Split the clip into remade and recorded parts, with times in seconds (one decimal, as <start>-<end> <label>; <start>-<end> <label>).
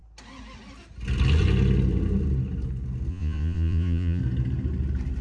0.0-3.1 recorded; 3.1-4.2 remade; 4.2-5.2 recorded